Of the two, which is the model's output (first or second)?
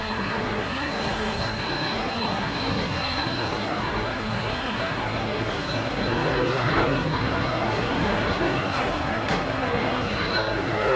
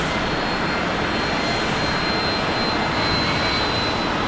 first